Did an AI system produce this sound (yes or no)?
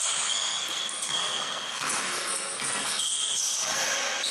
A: yes